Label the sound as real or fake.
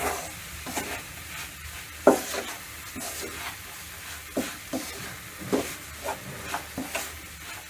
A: real